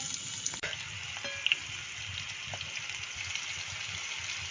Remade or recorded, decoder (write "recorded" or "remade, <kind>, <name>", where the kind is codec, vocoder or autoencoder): recorded